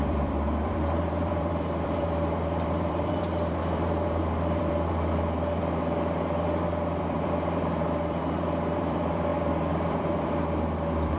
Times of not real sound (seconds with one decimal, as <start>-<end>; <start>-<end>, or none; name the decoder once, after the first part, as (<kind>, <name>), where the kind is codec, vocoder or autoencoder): 0.0-5.6 (vocoder, BigVGAN v2); 7.0-11.2